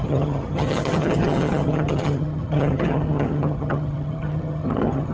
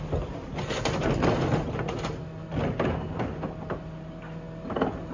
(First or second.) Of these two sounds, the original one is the second